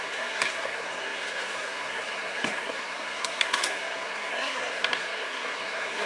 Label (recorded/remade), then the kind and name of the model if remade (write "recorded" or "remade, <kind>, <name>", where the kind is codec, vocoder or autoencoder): remade, codec, SNAC